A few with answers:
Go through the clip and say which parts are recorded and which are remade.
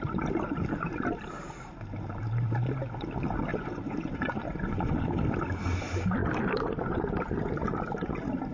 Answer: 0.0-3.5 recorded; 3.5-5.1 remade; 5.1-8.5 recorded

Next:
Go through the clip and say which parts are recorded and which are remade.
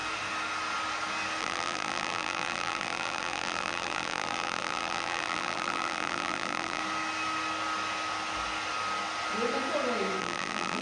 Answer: 0.0-1.4 recorded; 1.4-6.8 remade; 6.8-10.2 recorded; 10.2-10.8 remade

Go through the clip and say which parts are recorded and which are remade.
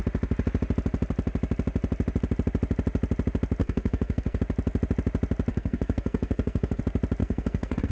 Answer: 0.0-3.6 recorded; 3.6-4.4 remade; 4.4-5.5 recorded; 5.5-6.8 remade; 6.8-7.2 recorded; 7.2-7.9 remade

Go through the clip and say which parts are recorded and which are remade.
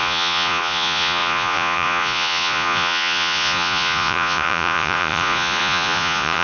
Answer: 0.0-6.4 remade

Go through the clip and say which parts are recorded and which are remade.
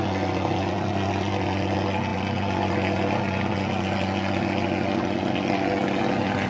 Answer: 0.0-6.5 recorded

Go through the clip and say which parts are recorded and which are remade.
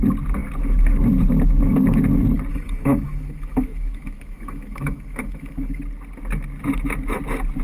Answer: 0.0-2.5 recorded; 2.5-5.8 remade; 5.8-7.6 recorded